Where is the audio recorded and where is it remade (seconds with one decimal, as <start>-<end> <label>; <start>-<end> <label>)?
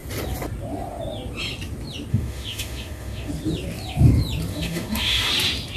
0.0-2.1 recorded; 2.1-3.3 remade; 3.3-4.5 recorded; 4.5-5.3 remade; 5.3-5.8 recorded